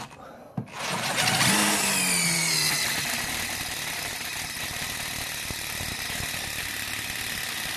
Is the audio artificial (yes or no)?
no